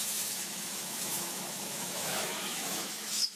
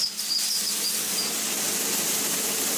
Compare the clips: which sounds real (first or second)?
second